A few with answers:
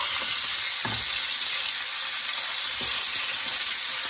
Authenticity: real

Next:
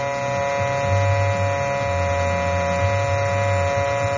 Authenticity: real